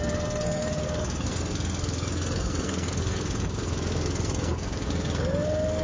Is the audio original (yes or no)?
no